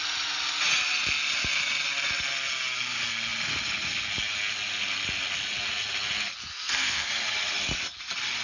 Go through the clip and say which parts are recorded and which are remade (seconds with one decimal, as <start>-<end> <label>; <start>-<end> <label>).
0.0-6.5 recorded; 6.5-7.1 remade; 7.1-8.4 recorded